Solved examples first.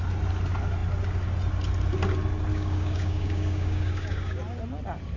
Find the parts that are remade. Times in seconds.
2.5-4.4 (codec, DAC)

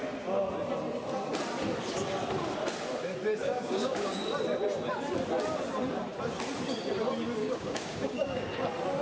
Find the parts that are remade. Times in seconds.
3.4-4.2 (codec, DAC); 7.4-8.5

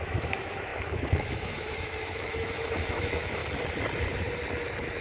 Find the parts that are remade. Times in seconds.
0.0-3.4 (autoencoder, DAC-VAE)

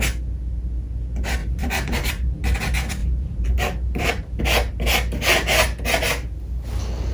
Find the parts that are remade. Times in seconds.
1.4-2.1 (vocoder, BigVGAN v2); 3.0-4.4

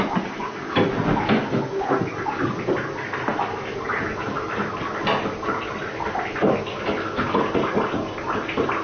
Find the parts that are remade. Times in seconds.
none

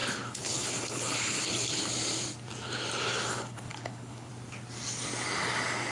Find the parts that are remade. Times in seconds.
0.0-1.9 (codec, HILCodec); 3.3-4.3

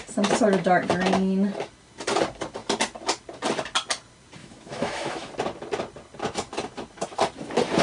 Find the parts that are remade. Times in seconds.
4.4-5.3 (autoencoder, DAC-VAE)

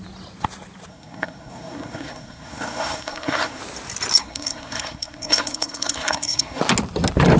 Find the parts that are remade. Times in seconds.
0.9-3.6 (codec, SNAC); 4.2-6.6